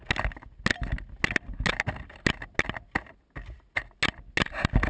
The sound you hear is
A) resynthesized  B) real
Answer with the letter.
B